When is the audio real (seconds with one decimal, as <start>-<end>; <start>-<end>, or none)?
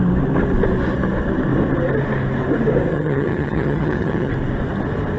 0.0-2.9; 4.3-5.2